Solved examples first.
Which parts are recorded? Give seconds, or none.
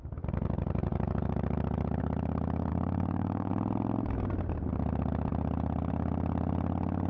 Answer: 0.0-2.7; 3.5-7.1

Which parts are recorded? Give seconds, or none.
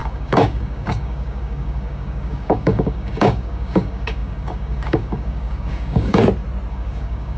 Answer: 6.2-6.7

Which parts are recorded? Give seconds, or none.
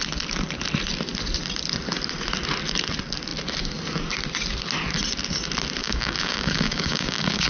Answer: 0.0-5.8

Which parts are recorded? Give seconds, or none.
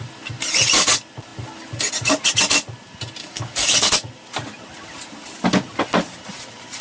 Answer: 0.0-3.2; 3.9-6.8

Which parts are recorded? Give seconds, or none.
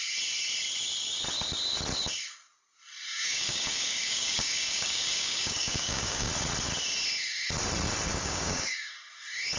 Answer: 0.0-3.1; 6.3-8.1; 8.9-9.6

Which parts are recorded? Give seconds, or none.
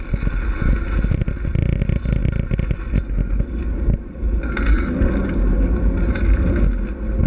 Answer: 0.0-7.3